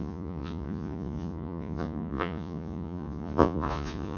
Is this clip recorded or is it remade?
remade